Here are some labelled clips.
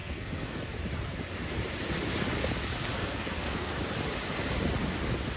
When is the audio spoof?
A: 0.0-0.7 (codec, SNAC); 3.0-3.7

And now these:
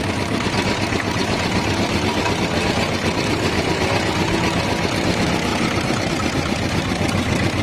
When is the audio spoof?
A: 1.2-2.2 (vocoder, BigVGAN v2); 5.5-6.1

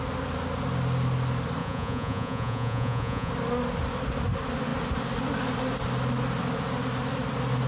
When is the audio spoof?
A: 1.6-3.3 (vocoder, Vocos)